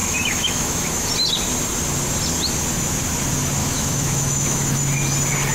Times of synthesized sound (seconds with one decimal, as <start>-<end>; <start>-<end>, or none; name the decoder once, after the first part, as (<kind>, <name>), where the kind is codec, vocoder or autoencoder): 0.0-1.1 (autoencoder, DAC-VAE); 3.6-4.8